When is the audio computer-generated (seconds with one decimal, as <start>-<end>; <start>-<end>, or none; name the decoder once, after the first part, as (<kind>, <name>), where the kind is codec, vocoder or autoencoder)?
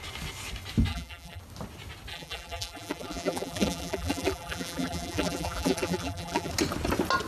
0.9-1.4 (vocoder, BigVGAN v2); 2.1-6.5